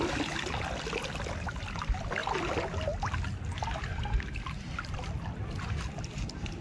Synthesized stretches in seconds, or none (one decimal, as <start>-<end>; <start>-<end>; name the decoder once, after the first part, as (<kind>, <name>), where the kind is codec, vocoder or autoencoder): none